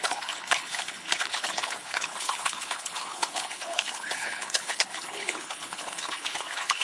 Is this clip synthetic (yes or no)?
yes